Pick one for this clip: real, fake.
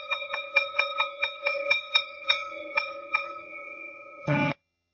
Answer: fake